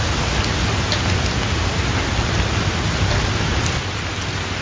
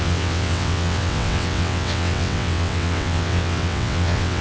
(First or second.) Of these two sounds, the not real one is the second